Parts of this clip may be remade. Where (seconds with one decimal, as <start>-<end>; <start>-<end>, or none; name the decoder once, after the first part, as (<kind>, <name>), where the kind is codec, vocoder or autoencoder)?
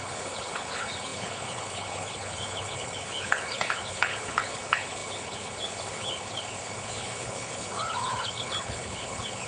0.0-9.5 (codec, HILCodec)